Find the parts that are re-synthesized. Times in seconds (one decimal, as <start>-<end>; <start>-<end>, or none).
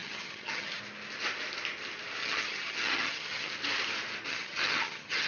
0.0-0.8; 2.2-3.5; 4.3-5.3